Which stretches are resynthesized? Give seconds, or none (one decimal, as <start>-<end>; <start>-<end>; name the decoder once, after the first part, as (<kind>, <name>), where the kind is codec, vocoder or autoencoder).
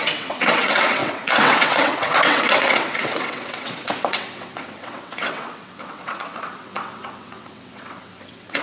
0.0-8.6 (vocoder, WaveNeXt)